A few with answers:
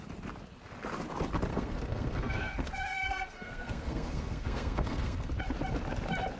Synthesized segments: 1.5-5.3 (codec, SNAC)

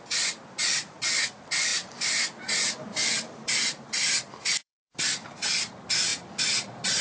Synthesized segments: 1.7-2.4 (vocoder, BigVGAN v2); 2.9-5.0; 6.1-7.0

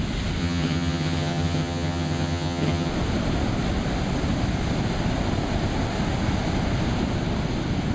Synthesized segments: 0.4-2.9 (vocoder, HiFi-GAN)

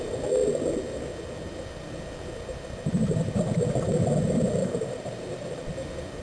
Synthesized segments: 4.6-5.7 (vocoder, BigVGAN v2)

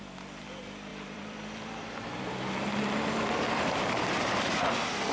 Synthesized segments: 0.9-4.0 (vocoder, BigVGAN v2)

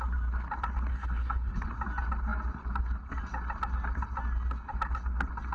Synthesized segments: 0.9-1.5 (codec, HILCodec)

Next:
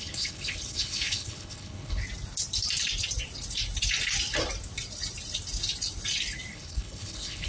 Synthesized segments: 0.0-2.0 (codec, HILCodec); 6.5-7.5